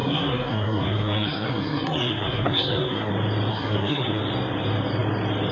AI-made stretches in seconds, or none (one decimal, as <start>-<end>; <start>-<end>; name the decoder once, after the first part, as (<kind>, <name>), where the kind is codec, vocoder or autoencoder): 0.0-3.1 (codec, SNAC); 3.5-4.2